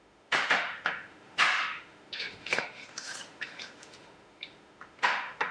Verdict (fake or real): fake